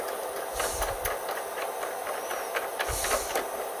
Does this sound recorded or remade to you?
recorded